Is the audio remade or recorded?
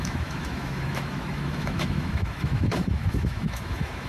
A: remade